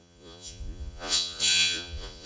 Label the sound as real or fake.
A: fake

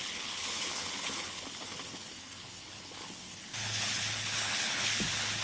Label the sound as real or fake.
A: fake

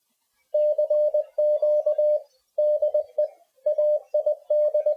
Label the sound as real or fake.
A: real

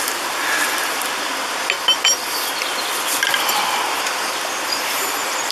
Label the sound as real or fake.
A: real